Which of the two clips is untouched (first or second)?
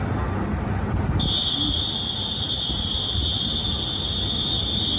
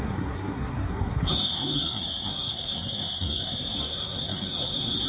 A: first